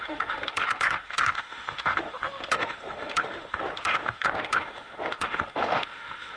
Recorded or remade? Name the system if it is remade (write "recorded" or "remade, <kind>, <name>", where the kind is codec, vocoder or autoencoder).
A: remade, autoencoder, DAC-VAE